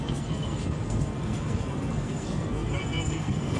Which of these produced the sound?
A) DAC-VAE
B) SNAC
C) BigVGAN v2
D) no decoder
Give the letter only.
B